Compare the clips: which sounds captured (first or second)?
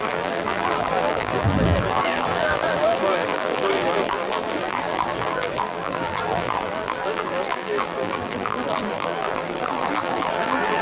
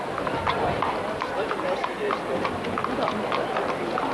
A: second